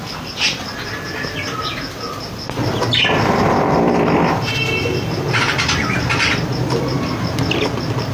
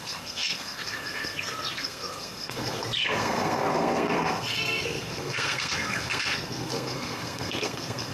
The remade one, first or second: second